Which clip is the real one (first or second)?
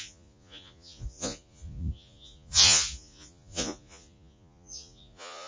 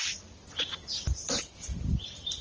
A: second